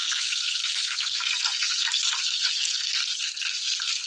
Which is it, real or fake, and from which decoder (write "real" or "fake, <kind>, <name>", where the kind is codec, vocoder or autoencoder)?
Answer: fake, codec, SNAC